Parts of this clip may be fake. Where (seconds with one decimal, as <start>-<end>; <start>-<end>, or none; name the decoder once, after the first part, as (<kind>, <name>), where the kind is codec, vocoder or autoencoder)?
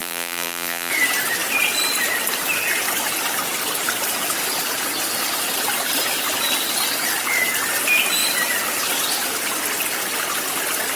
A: 0.0-0.9 (vocoder, BigVGAN v2)